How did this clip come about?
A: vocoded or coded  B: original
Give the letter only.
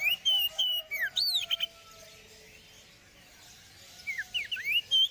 B